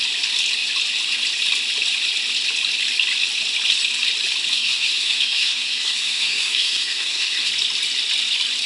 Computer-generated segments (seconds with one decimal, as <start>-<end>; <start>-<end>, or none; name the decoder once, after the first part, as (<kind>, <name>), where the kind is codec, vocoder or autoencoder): 4.5-7.5 (codec, SNAC)